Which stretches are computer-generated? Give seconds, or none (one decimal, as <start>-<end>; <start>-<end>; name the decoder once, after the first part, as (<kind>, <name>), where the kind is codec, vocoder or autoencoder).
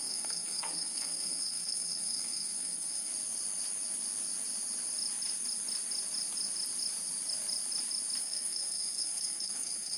0.0-3.1 (codec, SNAC); 8.2-10.0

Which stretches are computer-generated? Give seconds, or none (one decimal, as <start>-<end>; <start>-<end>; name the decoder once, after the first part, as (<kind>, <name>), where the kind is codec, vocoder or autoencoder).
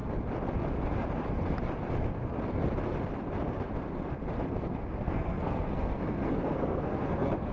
4.5-7.5 (codec, SNAC)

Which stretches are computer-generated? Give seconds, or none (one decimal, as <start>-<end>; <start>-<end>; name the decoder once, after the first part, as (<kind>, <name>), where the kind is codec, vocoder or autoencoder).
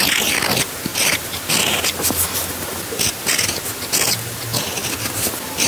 none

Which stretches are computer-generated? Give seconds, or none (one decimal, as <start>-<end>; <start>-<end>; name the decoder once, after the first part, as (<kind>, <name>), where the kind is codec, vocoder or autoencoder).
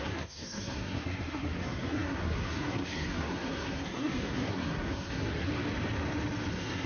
0.0-5.5 (codec, SNAC); 6.5-6.9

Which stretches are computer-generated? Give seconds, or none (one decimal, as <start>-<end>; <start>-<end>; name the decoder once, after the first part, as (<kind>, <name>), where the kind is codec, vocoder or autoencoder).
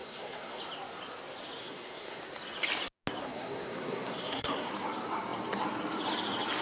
0.0-0.6 (codec, SNAC); 1.6-2.2; 3.2-4.7